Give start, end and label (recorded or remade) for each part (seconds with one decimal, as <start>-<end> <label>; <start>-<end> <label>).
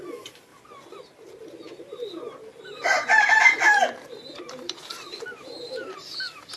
0.0-0.5 remade; 0.5-1.0 recorded; 1.0-6.6 remade